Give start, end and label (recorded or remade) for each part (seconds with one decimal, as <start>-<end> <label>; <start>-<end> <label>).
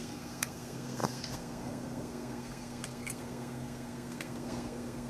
0.0-5.1 remade